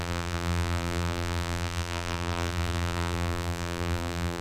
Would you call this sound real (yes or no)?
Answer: no